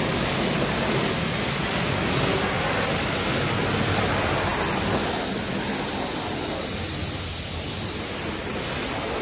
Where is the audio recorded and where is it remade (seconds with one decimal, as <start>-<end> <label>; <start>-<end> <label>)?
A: 0.0-9.2 recorded